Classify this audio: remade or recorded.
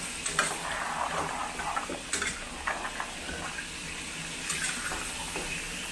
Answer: recorded